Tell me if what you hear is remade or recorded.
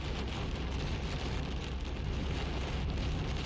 recorded